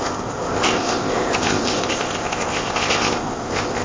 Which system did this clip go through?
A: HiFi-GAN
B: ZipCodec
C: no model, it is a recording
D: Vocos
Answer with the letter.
B